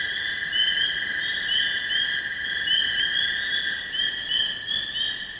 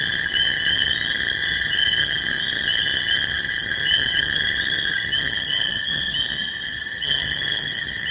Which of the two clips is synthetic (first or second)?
second